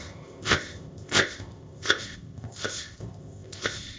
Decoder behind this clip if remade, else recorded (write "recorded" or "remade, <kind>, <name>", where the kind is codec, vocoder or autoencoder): remade, codec, ZipCodec